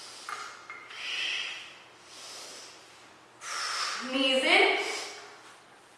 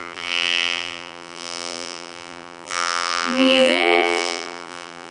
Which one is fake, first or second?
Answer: second